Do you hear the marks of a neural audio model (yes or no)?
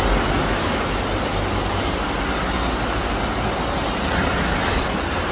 no